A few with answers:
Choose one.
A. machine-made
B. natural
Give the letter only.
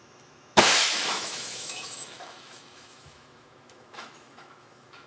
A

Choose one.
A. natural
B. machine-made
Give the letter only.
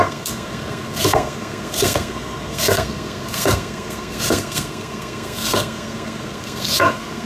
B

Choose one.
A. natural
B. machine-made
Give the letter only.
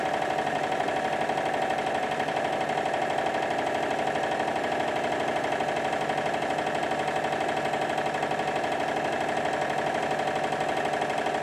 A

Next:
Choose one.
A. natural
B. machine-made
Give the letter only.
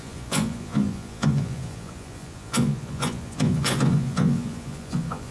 B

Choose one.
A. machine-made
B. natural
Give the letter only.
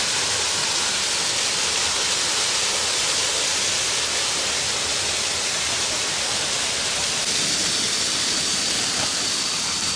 B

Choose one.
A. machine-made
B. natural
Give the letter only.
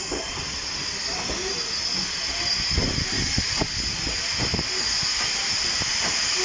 B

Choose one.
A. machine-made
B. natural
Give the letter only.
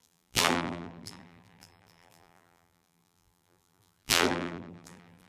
A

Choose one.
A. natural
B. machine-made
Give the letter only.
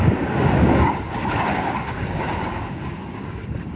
B